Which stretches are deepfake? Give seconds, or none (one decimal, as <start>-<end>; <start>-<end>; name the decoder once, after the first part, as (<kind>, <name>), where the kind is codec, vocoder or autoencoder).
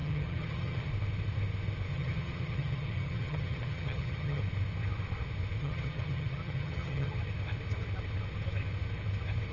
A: 0.0-0.9 (vocoder, HiFi-GAN); 1.9-4.4; 5.6-7.2